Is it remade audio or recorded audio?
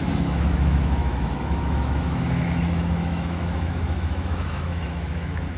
remade